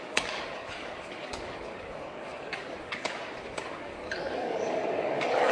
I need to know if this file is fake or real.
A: fake